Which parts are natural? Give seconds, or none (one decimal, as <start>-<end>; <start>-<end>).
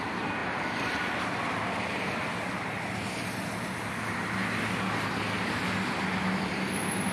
0.0-7.1